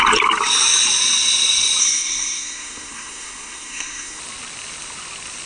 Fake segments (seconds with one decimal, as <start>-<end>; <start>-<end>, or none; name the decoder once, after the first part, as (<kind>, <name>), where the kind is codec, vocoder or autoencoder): 1.8-4.2 (codec, SNAC)